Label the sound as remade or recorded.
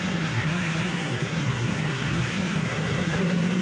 remade